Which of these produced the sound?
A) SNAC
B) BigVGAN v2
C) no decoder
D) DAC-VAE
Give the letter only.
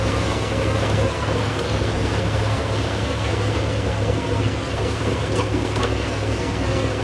A